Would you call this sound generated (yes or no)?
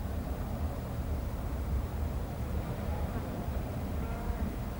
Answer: yes